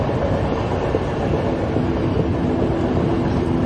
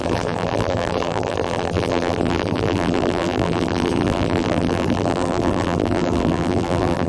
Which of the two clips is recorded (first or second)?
first